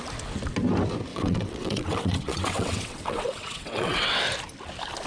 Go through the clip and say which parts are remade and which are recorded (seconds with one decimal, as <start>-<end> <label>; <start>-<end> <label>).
0.0-1.1 recorded; 1.1-4.2 remade; 4.2-5.1 recorded